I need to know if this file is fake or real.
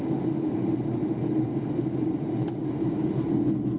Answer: real